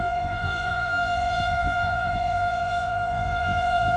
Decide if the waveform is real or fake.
fake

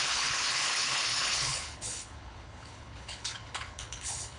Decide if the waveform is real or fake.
fake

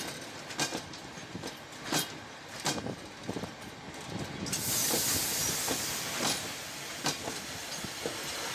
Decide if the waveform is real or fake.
real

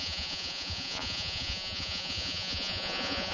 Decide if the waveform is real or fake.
fake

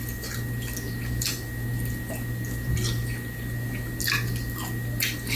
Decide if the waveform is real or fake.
real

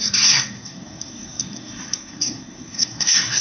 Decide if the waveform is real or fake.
fake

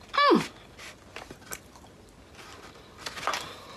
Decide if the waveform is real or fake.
real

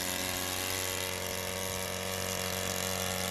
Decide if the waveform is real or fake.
real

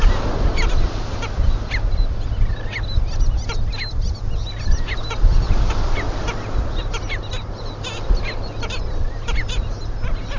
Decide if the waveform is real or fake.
real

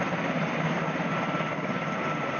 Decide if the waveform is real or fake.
real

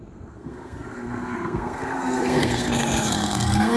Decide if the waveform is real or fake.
fake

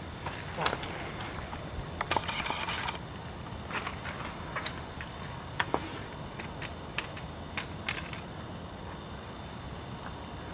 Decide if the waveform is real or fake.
real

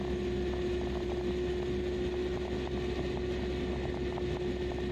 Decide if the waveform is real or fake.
real